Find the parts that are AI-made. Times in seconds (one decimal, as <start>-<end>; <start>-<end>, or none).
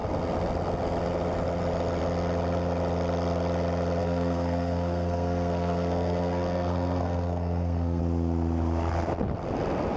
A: 4.0-8.0